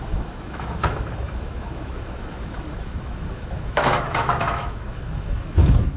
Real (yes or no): no